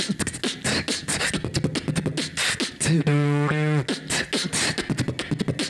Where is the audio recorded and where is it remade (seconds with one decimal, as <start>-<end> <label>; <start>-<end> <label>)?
0.0-5.7 recorded